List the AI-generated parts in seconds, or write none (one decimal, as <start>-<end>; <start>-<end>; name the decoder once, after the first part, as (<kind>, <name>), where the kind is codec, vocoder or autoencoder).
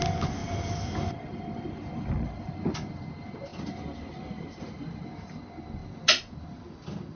0.4-1.6 (vocoder, BigVGAN v2); 3.5-4.6